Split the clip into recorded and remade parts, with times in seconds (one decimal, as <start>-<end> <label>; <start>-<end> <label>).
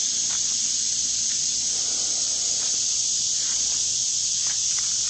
0.0-5.1 recorded